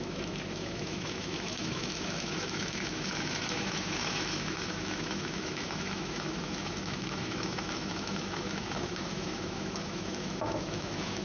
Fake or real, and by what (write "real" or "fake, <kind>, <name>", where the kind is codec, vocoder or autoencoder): fake, autoencoder, DAC-VAE